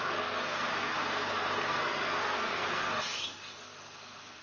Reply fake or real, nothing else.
fake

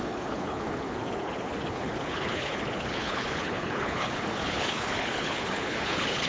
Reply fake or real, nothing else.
fake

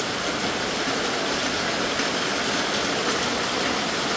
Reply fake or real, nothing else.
real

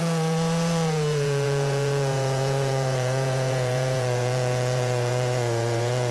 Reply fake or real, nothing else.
fake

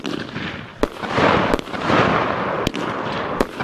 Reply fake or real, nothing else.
real